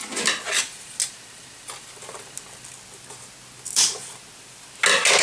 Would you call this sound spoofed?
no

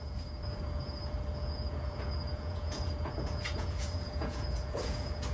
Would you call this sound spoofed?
yes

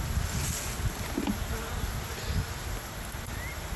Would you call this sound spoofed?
no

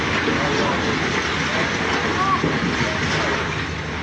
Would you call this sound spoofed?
no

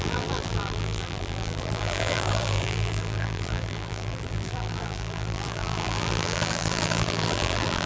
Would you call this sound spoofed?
yes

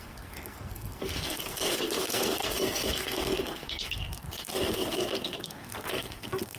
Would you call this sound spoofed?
yes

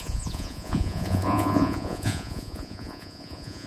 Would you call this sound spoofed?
yes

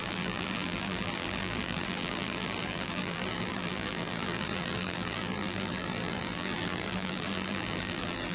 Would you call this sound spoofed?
yes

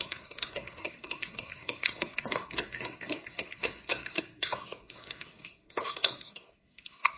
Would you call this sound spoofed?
yes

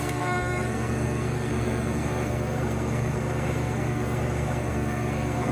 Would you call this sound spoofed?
yes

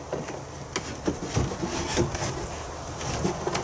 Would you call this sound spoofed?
no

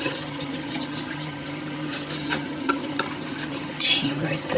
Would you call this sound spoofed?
yes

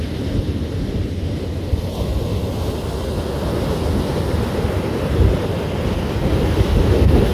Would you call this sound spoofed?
no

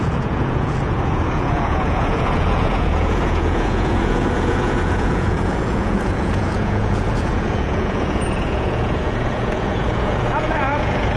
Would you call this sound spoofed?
yes